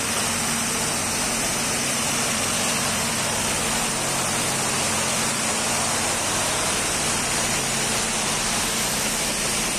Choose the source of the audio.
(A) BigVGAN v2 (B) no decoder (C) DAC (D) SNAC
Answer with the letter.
B